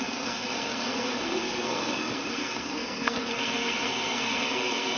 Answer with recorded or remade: remade